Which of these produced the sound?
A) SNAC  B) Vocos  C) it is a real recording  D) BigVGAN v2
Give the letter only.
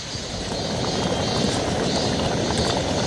C